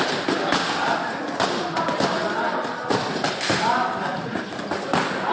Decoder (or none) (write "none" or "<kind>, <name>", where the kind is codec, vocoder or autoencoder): none